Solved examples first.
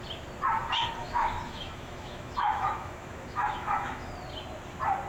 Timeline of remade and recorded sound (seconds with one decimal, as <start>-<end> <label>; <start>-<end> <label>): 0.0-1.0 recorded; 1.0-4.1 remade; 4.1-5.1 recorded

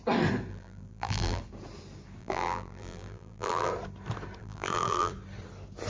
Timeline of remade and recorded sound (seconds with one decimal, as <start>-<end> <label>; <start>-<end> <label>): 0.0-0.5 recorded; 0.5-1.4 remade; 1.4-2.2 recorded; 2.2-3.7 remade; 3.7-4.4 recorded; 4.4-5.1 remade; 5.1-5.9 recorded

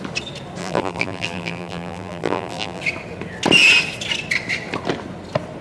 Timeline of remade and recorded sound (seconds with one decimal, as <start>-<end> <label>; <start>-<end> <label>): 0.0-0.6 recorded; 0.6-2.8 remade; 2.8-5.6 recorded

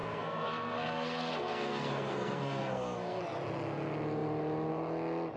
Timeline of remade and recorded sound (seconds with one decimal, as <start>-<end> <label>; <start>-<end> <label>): 0.0-3.2 remade; 3.2-5.4 recorded